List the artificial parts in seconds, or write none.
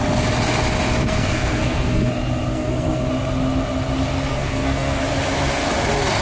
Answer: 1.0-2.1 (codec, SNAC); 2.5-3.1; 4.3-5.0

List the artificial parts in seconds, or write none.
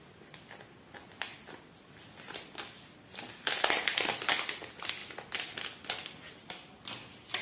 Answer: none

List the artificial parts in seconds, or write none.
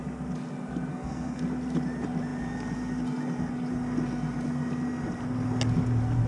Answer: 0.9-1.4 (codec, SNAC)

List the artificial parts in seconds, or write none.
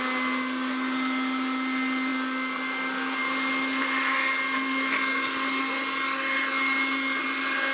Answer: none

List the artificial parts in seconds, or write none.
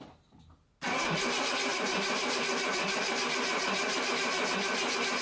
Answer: 1.7-4.5 (vocoder, BigVGAN v2)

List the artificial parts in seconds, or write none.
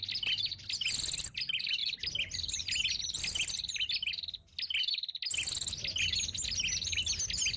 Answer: none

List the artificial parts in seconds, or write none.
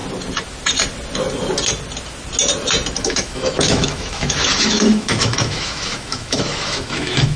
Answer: 3.0-7.4 (autoencoder, DAC-VAE)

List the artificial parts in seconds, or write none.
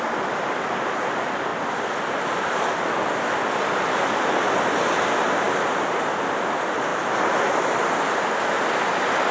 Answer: none